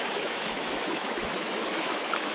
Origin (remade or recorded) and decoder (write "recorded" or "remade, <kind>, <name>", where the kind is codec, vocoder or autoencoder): remade, autoencoder, DAC-VAE